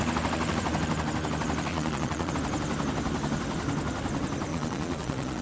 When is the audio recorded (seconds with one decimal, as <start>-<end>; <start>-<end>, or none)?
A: 0.0-1.7; 2.3-4.5